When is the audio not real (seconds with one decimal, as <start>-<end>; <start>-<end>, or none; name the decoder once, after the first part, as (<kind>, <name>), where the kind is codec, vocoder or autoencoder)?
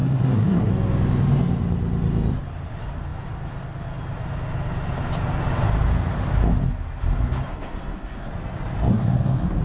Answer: 0.0-0.7 (codec, SNAC); 7.5-8.3; 8.9-9.6